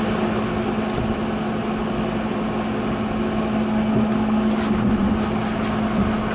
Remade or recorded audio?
recorded